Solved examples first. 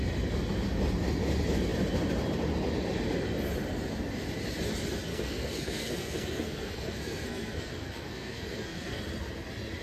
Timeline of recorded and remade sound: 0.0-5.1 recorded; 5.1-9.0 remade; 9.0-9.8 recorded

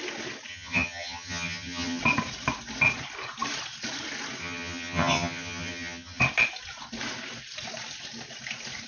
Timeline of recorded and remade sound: 0.0-0.5 recorded; 0.5-2.0 remade; 2.0-4.4 recorded; 4.4-6.2 remade; 6.2-8.9 recorded

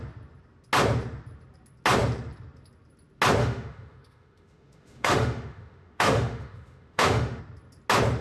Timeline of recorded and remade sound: 0.0-3.4 recorded; 3.4-7.4 remade; 7.4-8.2 recorded

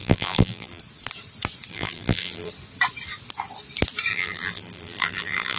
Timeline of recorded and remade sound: 0.0-0.8 remade; 0.8-1.7 recorded; 1.7-2.5 remade; 2.5-4.1 recorded; 4.1-5.6 remade

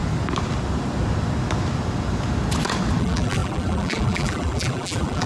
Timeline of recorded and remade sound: 0.0-3.0 recorded; 3.0-5.3 remade

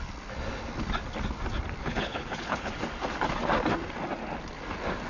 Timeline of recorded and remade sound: 0.0-1.8 recorded; 1.8-2.7 remade; 2.7-5.1 recorded

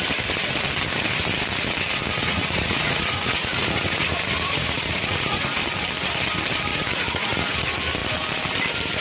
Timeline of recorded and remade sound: 0.0-2.2 recorded; 2.2-5.6 remade; 5.6-6.7 recorded; 6.7-7.6 remade; 7.6-9.0 recorded

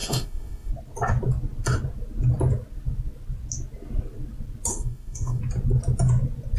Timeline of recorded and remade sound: 0.0-0.7 remade; 0.7-4.7 recorded; 4.7-5.4 remade; 5.4-6.6 recorded